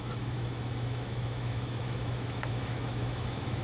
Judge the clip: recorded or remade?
remade